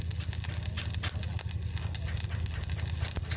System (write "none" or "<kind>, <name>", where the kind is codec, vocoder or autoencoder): none